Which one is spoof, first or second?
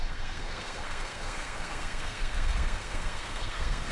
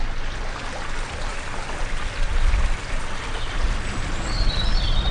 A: first